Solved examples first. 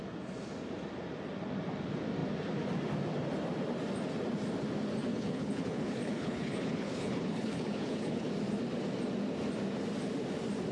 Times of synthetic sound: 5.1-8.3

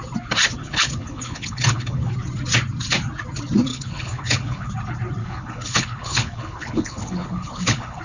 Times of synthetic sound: 0.6-2.1; 3.7-4.7; 5.2-8.0